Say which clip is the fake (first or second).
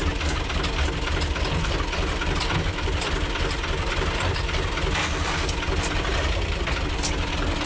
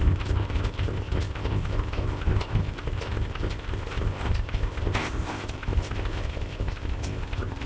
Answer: second